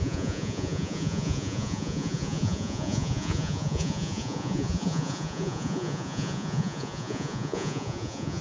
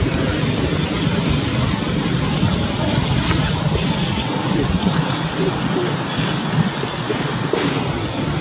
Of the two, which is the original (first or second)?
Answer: second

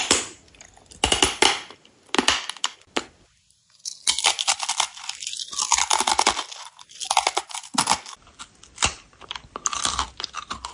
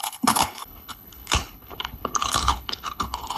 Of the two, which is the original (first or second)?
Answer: first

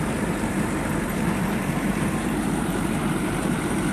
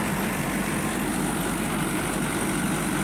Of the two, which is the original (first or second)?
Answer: second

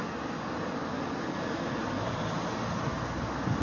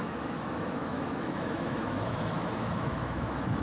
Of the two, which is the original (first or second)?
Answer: first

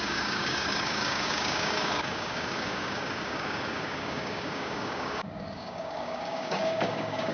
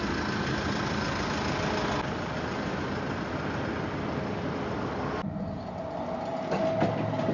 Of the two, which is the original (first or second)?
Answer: second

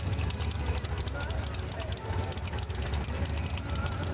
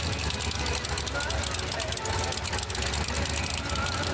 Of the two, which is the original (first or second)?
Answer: second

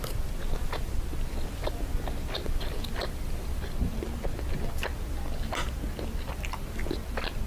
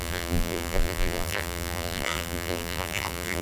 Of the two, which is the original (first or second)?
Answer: first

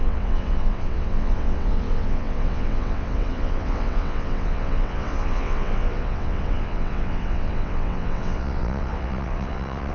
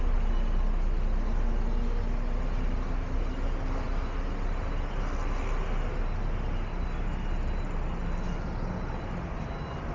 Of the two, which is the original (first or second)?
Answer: second